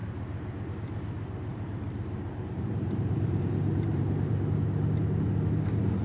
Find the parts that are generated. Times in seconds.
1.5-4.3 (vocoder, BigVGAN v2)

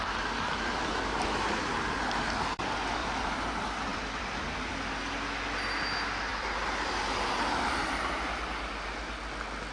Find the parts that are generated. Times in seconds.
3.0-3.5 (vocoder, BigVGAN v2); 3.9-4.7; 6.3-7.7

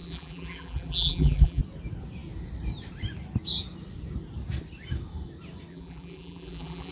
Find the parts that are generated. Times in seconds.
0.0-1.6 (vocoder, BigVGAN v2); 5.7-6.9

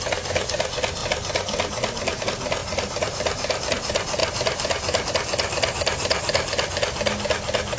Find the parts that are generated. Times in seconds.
2.6-3.7 (vocoder, BigVGAN v2)

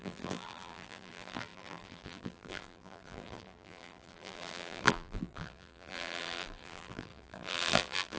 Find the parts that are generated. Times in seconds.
0.0-8.2 (vocoder, BigVGAN v2)

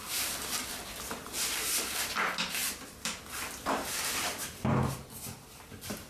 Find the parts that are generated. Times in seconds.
2.6-6.1 (vocoder, BigVGAN v2)

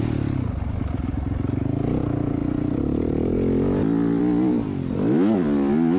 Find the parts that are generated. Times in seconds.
none

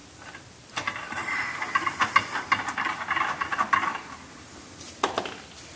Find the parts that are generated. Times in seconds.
0.0-1.2 (vocoder, BigVGAN v2); 4.7-5.8